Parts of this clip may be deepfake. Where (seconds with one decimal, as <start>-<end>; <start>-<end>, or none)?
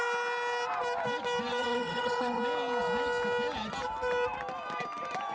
1.6-2.4